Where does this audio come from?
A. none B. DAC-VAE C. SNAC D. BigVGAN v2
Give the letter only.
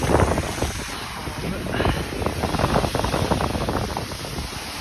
A